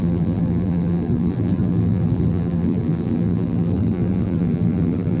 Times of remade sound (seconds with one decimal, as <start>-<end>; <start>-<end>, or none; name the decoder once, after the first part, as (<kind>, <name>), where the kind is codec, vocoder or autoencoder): 0.0-5.2 (vocoder, BigVGAN v2)